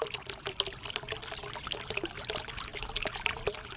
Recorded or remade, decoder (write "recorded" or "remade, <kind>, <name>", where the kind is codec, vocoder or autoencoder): recorded